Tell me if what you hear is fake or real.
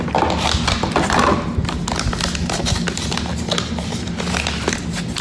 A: real